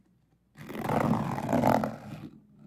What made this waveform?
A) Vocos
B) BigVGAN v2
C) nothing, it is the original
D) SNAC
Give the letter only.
C